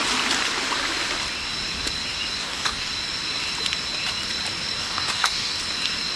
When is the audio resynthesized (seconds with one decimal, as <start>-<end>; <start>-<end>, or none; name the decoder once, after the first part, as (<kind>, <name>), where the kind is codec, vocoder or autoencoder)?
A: 2.4-2.9 (codec, DAC); 4.8-5.6